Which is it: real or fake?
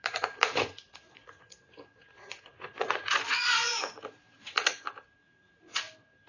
fake